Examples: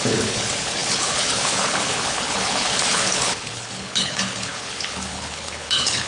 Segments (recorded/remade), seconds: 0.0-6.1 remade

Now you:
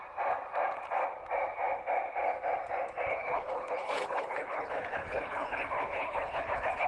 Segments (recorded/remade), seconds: 0.0-3.1 recorded; 3.1-6.9 remade

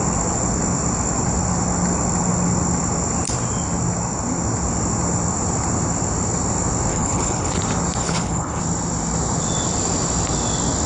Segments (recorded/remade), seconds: 0.0-6.9 recorded; 6.9-7.5 remade; 7.5-8.0 recorded; 8.0-8.6 remade; 8.6-10.9 recorded

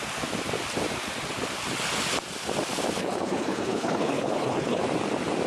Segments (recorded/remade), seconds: 0.0-3.0 recorded; 3.0-4.8 remade; 4.8-5.5 recorded

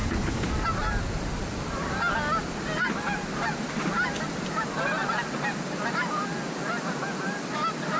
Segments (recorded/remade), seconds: 0.0-0.5 remade; 0.5-8.0 recorded